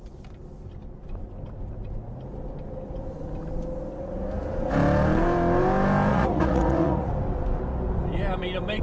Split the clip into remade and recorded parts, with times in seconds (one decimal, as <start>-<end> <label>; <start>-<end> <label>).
0.0-6.1 recorded; 6.1-7.1 remade; 7.1-8.8 recorded